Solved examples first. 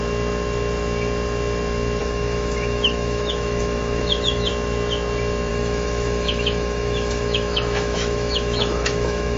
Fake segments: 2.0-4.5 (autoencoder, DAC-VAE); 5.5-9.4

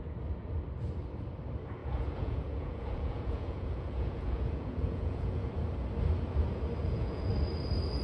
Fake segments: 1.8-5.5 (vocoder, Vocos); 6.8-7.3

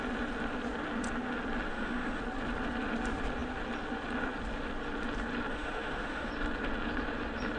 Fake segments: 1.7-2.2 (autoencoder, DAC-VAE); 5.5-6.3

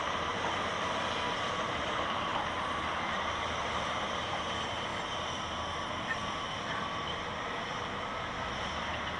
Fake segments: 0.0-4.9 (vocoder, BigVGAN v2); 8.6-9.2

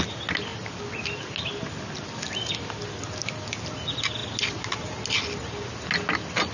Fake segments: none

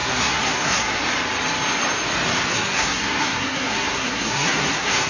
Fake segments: 0.0-1.0 (codec, SNAC); 2.5-5.1

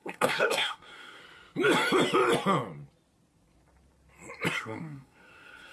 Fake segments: 0.0-1.2 (codec, SNAC); 4.6-5.7

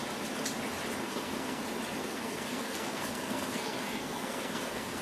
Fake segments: 1.0-1.6 (codec, SNAC); 2.0-5.0